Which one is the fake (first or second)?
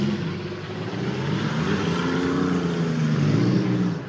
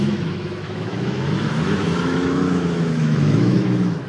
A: second